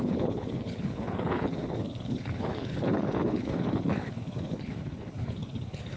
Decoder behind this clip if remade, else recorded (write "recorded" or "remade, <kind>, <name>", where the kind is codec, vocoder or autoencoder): remade, codec, HILCodec